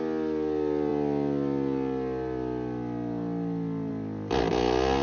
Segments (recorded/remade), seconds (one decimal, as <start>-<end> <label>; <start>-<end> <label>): 0.0-5.0 recorded

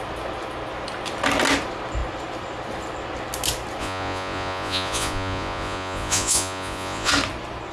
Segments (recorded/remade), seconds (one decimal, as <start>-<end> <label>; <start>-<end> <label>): 0.0-3.8 recorded; 3.8-7.1 remade; 7.1-7.7 recorded

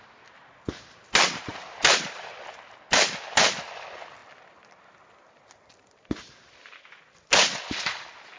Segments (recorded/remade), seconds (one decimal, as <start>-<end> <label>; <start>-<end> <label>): 0.0-1.5 recorded; 1.5-2.3 remade; 2.3-8.4 recorded

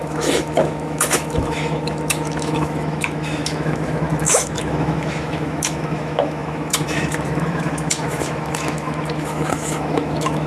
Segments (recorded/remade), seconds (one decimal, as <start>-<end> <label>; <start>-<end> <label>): 0.0-10.5 remade

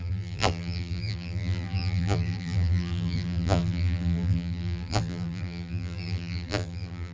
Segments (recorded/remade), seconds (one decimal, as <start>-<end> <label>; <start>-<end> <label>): 0.0-7.1 remade

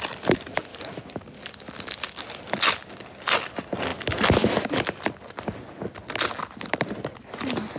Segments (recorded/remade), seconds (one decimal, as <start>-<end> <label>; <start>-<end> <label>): 0.0-7.8 recorded